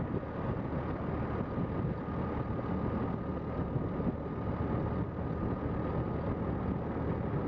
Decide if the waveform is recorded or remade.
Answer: recorded